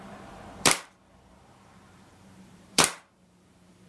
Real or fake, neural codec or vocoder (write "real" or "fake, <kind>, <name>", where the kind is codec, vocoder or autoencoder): fake, vocoder, BigVGAN v2